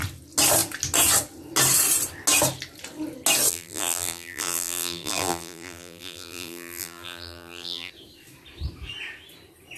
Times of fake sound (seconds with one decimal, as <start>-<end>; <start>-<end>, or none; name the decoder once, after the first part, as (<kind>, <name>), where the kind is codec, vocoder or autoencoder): 3.5-7.9 (vocoder, BigVGAN v2)